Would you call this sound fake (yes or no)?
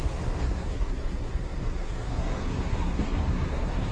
yes